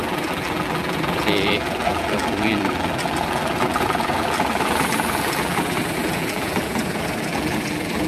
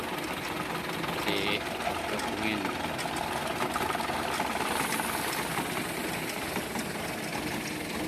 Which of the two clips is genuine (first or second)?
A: second